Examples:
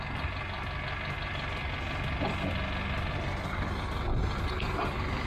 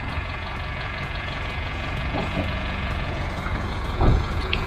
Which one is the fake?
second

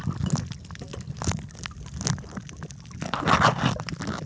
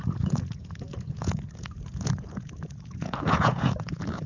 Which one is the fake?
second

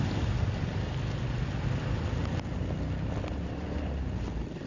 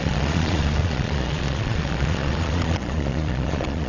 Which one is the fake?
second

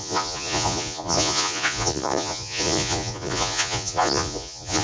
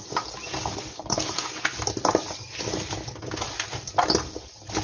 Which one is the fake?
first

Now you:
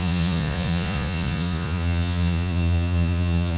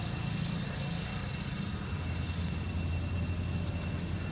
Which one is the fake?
first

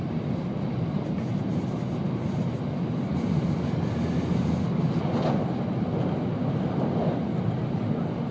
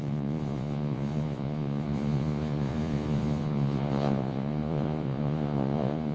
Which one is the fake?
second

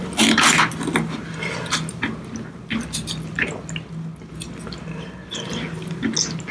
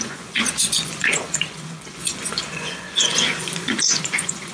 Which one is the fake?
second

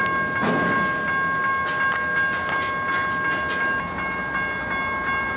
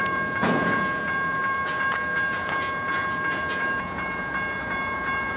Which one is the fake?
second